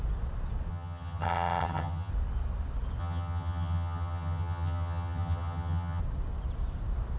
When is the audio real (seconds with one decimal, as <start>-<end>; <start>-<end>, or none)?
0.0-0.7; 2.1-3.0; 6.0-7.2